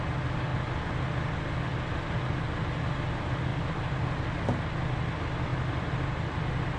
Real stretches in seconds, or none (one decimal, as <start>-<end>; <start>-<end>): 0.0-3.5; 4.0-5.5; 6.1-6.8